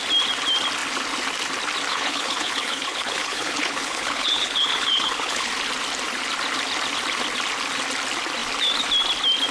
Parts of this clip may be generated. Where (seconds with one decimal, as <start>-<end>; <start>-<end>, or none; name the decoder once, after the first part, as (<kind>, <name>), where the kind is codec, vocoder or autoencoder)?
1.9-5.5 (codec, HILCodec)